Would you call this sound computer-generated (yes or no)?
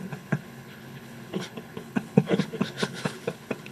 yes